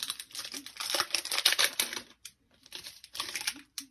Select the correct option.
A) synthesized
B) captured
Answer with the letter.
A